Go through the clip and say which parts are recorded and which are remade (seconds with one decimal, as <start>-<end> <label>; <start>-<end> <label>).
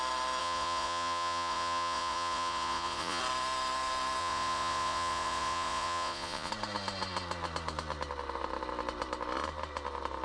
0.0-0.4 recorded; 0.4-3.2 remade; 3.2-4.2 recorded; 4.2-6.5 remade; 6.5-10.2 recorded